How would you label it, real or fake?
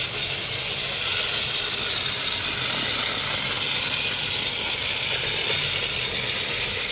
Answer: real